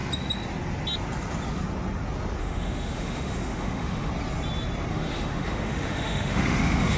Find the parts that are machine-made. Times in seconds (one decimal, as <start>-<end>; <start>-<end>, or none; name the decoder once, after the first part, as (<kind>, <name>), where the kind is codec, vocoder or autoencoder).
2.4-4.1 (autoencoder, DAC-VAE); 4.9-7.0